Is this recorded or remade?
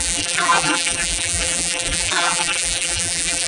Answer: remade